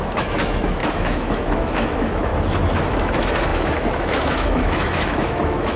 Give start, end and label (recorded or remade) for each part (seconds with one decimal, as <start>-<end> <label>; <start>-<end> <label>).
0.0-2.3 remade; 2.3-2.9 recorded; 2.9-5.8 remade